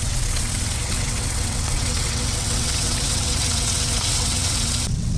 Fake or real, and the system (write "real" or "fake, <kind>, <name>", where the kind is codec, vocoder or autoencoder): fake, vocoder, WaveNeXt